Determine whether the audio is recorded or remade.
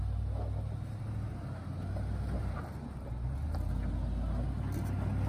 recorded